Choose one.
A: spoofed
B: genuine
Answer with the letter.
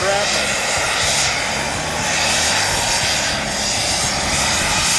B